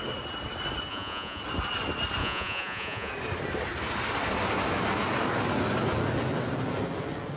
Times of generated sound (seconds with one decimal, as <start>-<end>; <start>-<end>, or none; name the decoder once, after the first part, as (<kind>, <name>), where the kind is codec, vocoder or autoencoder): 0.9-1.4 (vocoder, Vocos); 2.2-3.1